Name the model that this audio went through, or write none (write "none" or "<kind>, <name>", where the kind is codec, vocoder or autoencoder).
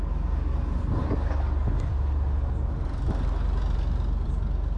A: none